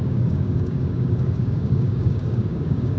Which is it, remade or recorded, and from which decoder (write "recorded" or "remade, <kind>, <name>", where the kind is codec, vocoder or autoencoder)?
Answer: remade, codec, DAC